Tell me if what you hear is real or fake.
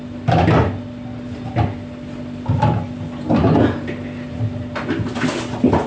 real